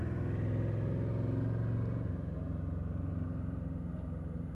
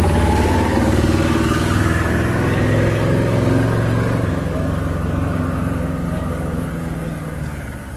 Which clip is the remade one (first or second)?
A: second